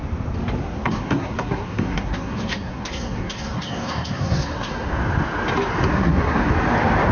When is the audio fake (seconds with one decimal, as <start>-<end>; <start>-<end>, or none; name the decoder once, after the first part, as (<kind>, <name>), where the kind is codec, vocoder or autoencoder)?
0.6-4.9 (codec, SNAC); 5.9-6.5